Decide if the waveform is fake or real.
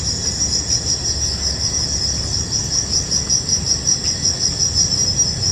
real